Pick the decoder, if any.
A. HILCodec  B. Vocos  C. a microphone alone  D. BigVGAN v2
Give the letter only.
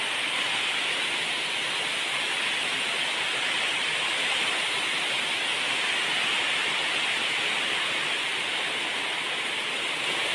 C